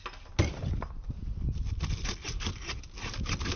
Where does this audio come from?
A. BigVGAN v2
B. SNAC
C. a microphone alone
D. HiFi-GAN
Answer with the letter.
C